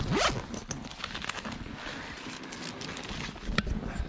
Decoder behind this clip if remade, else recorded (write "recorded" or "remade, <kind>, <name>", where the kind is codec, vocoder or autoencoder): recorded